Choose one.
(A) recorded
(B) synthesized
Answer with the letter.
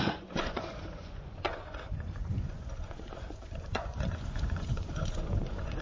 B